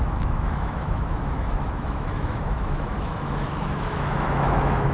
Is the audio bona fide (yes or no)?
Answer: no